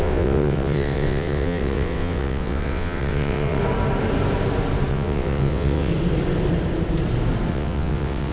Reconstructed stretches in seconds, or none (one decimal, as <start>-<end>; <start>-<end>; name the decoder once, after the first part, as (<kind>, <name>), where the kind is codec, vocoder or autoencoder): 0.0-3.6 (vocoder, WaveNeXt); 4.9-5.9; 7.5-8.3